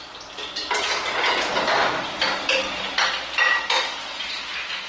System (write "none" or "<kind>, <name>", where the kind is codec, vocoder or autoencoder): none